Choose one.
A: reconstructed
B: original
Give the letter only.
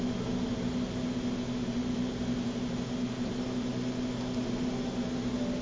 B